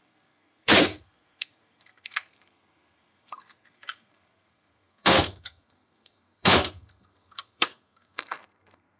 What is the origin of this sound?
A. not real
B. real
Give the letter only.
A